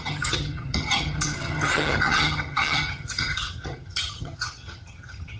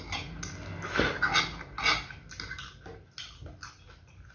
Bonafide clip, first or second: second